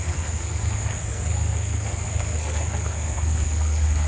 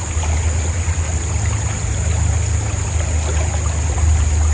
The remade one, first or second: first